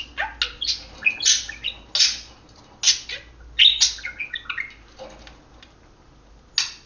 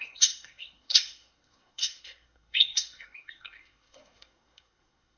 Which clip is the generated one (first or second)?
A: second